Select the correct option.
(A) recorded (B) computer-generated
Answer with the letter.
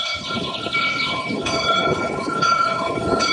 B